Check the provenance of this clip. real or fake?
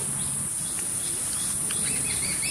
real